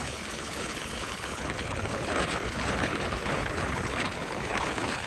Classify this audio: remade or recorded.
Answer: remade